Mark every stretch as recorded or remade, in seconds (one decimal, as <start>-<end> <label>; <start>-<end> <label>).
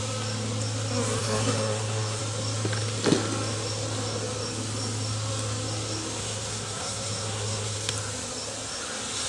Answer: 0.0-1.2 recorded; 1.2-2.2 remade; 2.2-6.2 recorded; 6.2-7.9 remade; 7.9-9.3 recorded